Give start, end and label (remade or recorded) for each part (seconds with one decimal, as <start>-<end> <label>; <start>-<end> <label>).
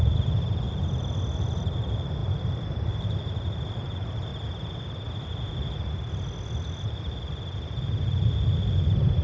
0.0-0.8 remade; 0.8-1.6 recorded; 1.6-4.3 remade; 4.3-6.8 recorded; 6.8-9.2 remade